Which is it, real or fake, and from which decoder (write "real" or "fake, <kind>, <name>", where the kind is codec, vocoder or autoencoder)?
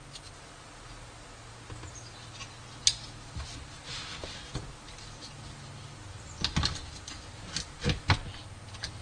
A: real